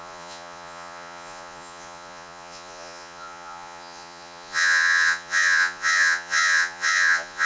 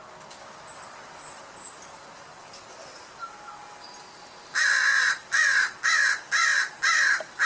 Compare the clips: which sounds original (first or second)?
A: second